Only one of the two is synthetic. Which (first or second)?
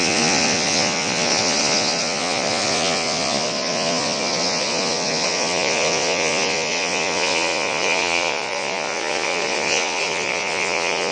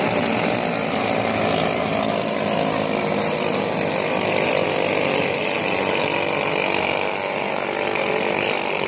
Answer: first